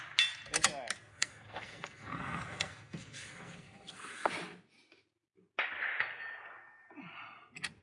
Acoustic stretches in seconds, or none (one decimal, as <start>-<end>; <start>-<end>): 0.0-1.1; 4.3-7.8